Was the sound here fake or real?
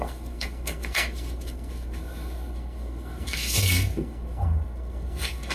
fake